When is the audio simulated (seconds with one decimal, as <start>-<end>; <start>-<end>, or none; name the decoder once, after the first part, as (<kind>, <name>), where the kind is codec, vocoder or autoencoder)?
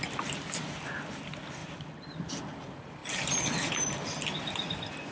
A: none